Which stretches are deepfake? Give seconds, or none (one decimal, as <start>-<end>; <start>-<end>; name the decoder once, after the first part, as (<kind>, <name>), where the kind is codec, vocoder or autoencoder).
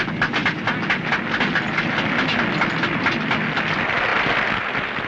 none